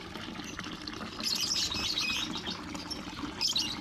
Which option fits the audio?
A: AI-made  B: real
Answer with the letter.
B